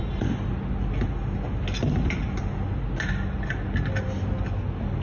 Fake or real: real